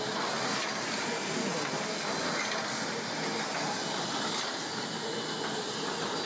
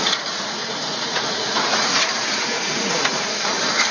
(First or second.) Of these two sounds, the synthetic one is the second